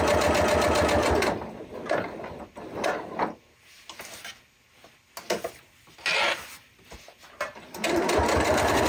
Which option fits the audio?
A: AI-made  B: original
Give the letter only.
B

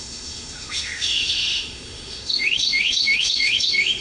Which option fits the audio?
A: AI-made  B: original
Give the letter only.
A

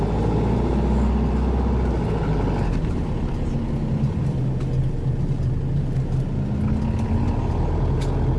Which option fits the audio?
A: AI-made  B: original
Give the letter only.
B